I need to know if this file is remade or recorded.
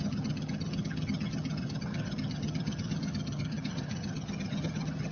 remade